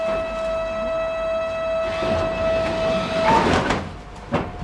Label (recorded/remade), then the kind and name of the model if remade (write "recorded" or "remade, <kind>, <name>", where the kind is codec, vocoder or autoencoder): recorded